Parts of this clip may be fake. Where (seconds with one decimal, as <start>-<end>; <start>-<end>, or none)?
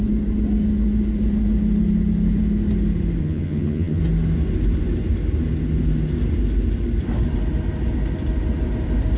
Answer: 3.2-4.0